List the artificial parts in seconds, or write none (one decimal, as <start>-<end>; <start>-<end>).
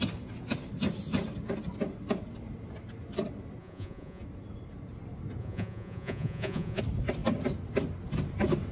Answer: 3.6-4.2; 5.4-6.8